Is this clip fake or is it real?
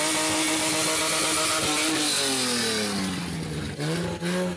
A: real